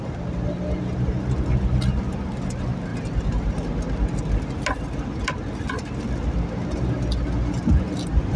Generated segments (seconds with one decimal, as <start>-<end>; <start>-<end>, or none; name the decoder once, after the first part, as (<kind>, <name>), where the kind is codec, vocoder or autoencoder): none